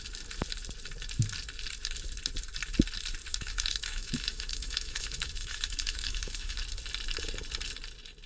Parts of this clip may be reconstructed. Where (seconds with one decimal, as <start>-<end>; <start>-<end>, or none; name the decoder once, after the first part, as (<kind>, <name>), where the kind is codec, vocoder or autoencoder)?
3.3-6.6 (autoencoder, DAC-VAE)